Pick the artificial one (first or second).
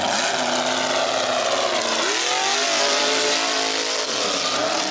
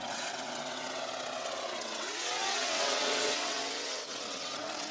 second